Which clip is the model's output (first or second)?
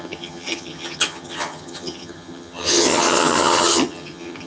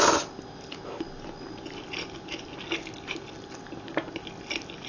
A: first